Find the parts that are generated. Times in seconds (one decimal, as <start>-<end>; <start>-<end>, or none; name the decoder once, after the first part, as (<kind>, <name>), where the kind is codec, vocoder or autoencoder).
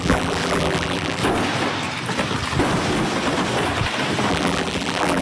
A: 0.0-1.2 (vocoder, BigVGAN v2); 4.3-5.2